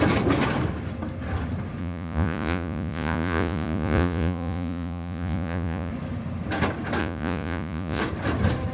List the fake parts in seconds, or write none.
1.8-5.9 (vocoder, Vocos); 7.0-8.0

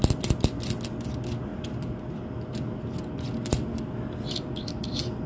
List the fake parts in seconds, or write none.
none

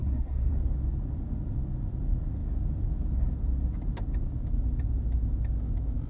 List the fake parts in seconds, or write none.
0.0-0.5 (codec, SNAC)

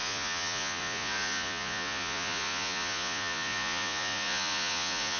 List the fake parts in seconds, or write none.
0.0-5.2 (vocoder, Vocos)

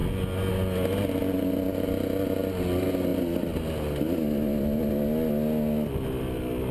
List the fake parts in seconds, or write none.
none

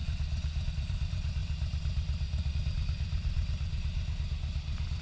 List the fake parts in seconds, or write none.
0.7-1.4 (vocoder, BigVGAN v2); 2.5-3.4